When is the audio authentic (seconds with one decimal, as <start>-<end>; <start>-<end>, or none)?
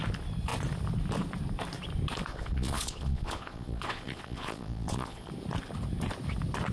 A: 0.0-2.3; 5.3-6.7